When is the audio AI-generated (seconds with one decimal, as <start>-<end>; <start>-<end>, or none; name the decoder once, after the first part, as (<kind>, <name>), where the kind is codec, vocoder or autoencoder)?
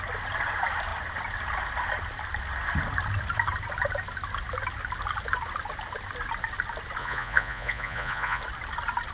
7.0-8.4 (vocoder, Vocos)